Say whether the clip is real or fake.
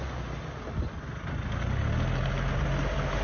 real